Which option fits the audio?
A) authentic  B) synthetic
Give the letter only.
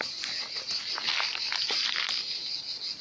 A